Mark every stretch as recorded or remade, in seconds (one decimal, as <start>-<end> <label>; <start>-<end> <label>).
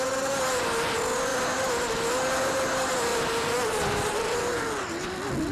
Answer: 0.0-3.1 recorded; 3.1-4.6 remade; 4.6-5.5 recorded